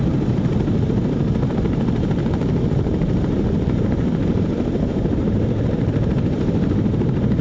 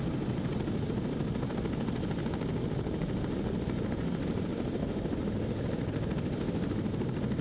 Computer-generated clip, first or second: first